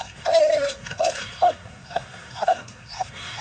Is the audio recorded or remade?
remade